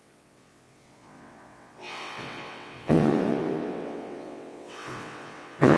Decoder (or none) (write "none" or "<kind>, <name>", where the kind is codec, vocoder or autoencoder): vocoder, WaveNeXt